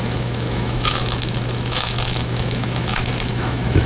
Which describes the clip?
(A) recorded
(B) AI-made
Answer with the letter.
B